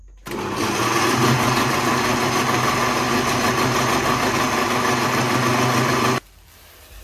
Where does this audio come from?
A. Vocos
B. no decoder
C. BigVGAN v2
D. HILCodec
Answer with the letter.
B